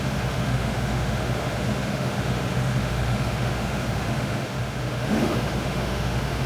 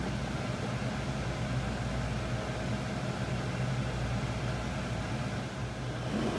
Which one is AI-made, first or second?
first